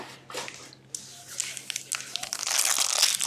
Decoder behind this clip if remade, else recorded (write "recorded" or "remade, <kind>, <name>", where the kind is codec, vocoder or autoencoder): recorded